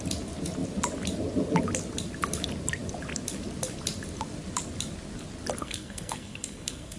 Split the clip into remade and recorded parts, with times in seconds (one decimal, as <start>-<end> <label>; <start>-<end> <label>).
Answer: 0.0-5.6 recorded; 5.6-7.0 remade